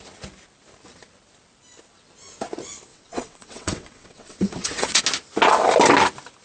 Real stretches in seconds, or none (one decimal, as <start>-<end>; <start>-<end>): 0.0-2.9; 5.0-6.4